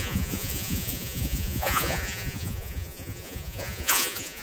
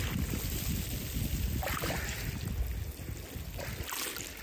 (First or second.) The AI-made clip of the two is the first